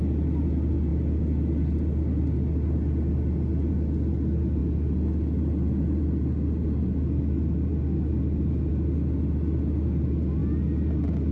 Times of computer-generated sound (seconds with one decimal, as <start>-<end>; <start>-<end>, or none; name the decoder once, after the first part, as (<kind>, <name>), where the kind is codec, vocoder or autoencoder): none